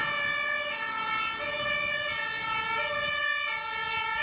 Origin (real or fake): real